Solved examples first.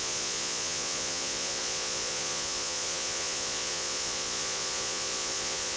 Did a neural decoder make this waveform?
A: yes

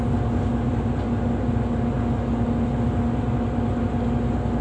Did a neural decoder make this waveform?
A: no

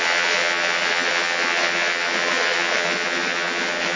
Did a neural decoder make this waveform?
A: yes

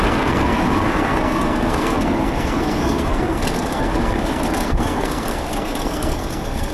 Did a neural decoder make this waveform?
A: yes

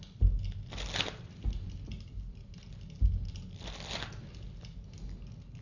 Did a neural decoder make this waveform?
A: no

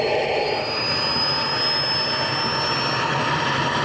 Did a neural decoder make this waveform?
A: no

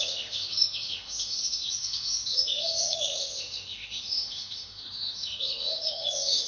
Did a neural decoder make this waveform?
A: yes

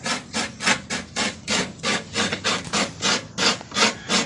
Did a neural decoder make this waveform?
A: no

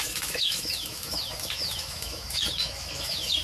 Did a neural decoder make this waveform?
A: yes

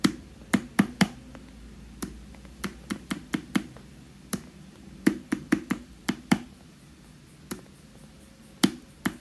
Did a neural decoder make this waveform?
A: no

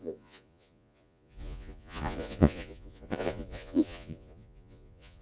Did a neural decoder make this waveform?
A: yes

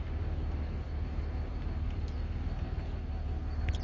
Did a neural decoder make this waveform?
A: no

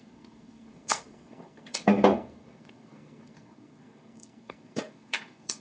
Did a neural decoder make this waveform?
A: yes